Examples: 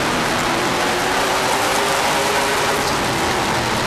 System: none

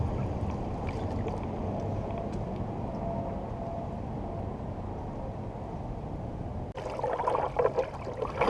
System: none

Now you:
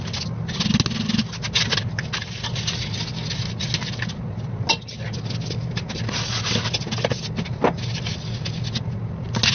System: none